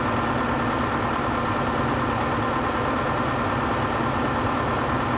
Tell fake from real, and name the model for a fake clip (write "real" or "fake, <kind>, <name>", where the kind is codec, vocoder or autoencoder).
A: real